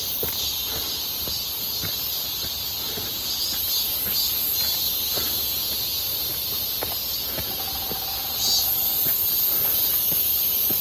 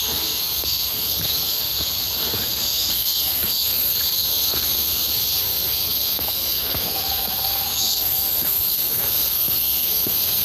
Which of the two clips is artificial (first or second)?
second